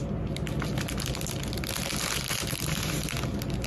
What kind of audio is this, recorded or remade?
recorded